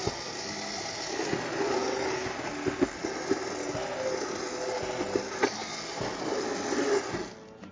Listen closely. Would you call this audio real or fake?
real